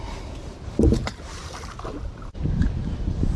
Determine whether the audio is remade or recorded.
remade